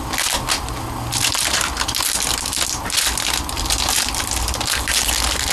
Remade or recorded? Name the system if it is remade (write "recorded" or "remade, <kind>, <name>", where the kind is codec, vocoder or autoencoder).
recorded